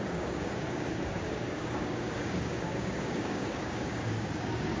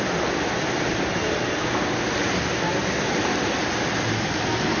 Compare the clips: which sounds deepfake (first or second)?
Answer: first